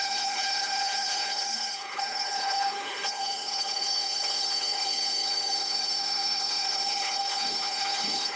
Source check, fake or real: fake